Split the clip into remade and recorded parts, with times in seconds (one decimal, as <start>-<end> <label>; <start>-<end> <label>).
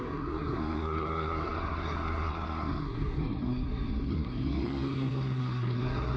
0.0-6.2 remade